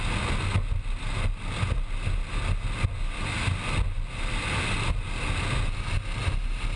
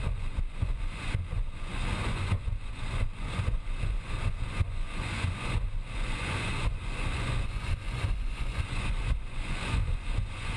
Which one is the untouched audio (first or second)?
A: first